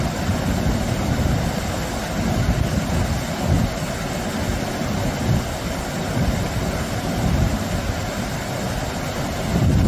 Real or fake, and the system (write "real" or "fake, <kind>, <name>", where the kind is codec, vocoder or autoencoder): real